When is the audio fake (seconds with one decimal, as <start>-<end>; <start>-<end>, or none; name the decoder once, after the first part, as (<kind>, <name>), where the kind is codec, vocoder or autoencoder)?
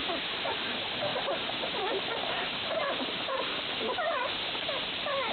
1.1-4.3 (vocoder, BigVGAN v2)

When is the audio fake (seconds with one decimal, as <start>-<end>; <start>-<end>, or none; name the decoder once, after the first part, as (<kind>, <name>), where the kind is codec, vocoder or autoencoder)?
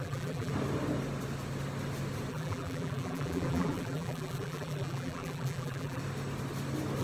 0.0-0.5 (vocoder, BigVGAN v2); 2.3-6.0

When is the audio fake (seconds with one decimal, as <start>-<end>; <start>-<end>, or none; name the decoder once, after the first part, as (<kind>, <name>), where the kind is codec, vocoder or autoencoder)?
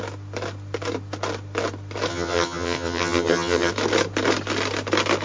2.1-3.7 (vocoder, HiFi-GAN)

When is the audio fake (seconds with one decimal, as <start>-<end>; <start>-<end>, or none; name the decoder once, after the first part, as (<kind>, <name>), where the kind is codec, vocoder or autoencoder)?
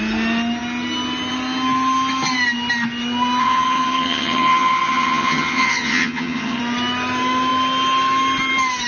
3.4-6.6 (vocoder, HiFi-GAN)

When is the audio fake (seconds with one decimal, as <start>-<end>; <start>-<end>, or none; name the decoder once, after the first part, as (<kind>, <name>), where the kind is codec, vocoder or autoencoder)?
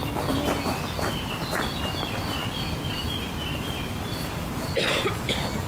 0.0-5.7 (vocoder, BigVGAN v2)